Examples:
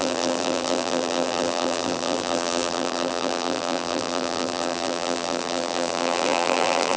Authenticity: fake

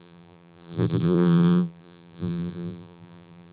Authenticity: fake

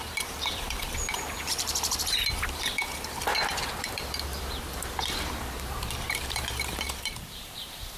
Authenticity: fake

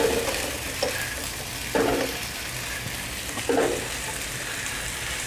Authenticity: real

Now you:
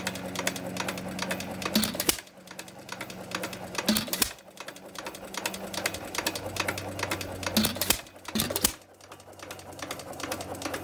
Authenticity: real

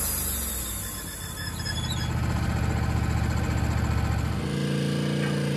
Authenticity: real